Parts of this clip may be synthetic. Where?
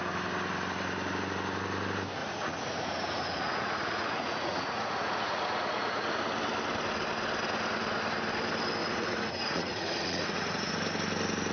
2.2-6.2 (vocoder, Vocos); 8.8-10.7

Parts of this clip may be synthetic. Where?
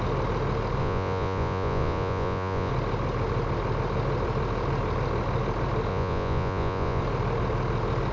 0.8-2.7 (vocoder, Vocos); 5.9-7.0